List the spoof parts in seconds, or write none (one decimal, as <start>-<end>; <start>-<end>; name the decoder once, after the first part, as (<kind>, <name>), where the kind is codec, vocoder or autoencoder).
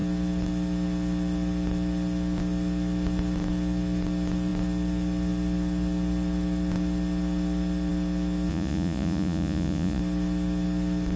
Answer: 8.5-10.0 (vocoder, Vocos)